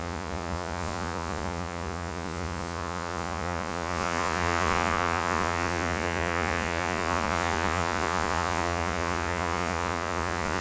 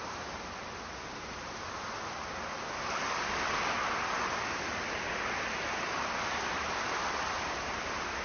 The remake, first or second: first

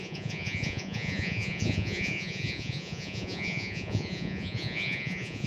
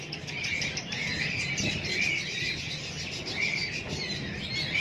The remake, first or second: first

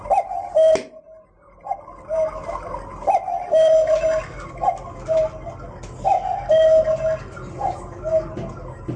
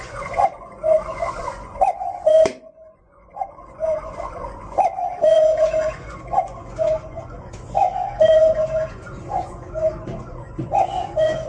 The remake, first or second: second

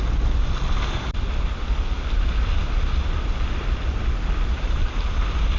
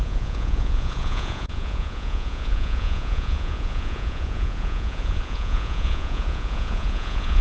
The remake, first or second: second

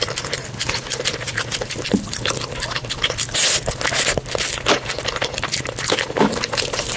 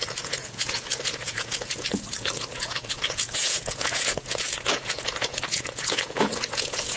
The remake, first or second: second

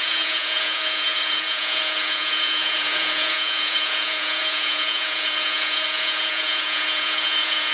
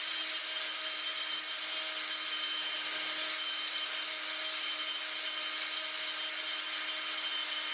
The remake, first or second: first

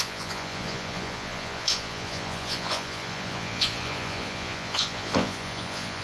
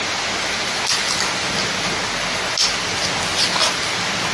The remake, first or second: first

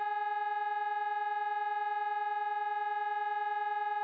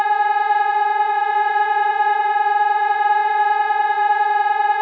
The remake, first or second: second